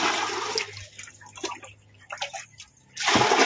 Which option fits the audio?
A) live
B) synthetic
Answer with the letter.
A